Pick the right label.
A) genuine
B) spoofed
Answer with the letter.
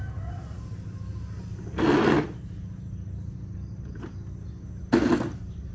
A